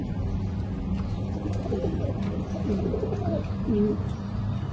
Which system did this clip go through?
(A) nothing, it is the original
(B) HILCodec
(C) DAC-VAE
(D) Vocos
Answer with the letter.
A